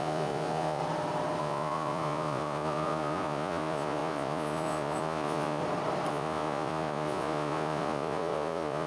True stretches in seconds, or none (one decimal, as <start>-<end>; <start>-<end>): 0.8-1.4; 5.6-6.1

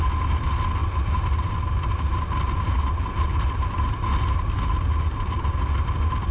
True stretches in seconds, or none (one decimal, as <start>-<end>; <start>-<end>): 0.0-6.3

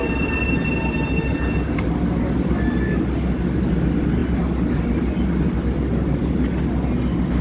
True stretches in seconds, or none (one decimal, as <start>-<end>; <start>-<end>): 0.0-7.4

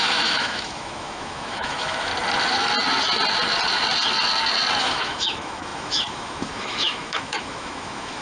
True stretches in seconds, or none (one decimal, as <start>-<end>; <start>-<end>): 2.1-4.8

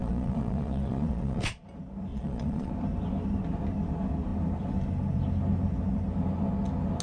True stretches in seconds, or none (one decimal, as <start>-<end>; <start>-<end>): 1.6-2.1; 2.7-7.0

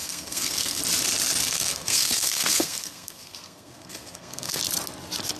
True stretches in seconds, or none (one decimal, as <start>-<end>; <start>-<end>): 0.8-1.4; 4.6-5.4